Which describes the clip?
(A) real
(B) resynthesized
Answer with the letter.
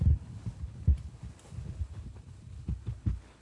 B